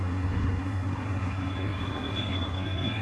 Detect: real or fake fake